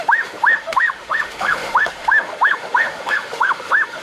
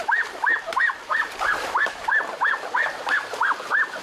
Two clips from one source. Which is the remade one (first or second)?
first